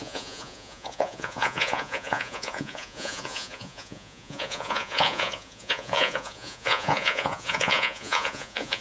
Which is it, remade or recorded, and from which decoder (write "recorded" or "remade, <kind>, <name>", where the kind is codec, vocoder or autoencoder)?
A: remade, vocoder, Vocos